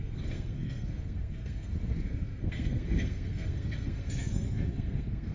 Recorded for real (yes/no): no